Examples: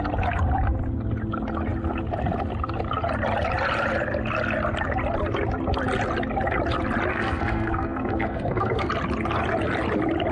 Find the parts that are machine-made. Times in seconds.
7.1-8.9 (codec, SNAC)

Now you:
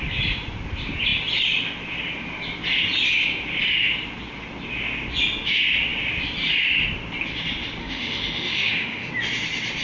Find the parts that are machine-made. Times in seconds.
7.8-9.1 (autoencoder, DAC-VAE)

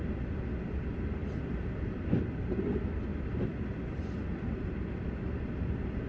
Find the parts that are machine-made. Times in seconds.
1.2-2.5 (vocoder, BigVGAN v2); 3.1-5.0

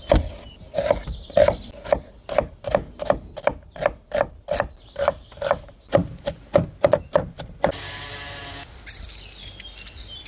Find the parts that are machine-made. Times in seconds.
none

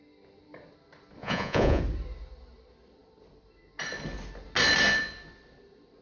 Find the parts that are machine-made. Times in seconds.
1.2-1.8 (vocoder, Vocos)